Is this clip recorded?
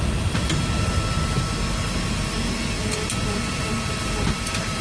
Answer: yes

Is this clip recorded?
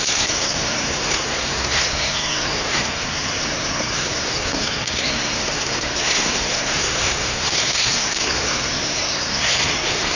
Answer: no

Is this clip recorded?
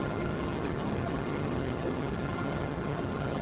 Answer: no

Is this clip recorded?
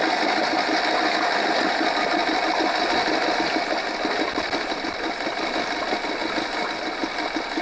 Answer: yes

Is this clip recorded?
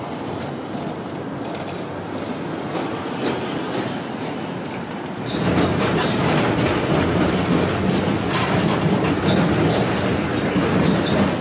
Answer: yes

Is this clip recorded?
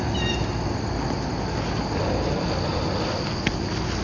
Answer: yes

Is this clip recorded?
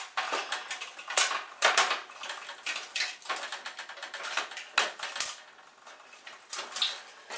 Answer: yes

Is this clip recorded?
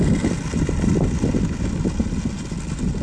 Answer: yes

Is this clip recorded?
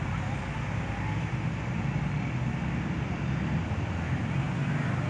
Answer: yes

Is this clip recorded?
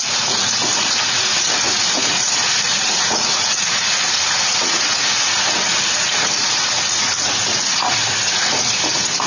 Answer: no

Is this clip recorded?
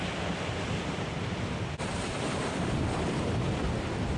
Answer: yes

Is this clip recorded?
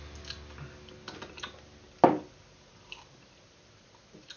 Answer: yes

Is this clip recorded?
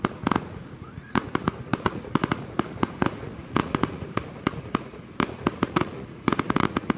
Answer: no